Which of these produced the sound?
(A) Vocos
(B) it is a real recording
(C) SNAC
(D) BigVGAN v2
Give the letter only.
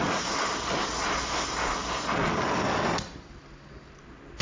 B